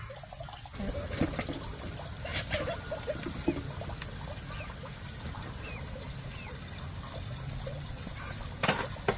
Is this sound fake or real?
real